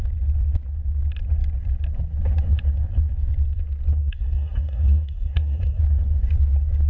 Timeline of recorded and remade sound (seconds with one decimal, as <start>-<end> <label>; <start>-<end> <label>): 0.0-4.0 recorded; 4.0-5.8 remade; 5.8-6.9 recorded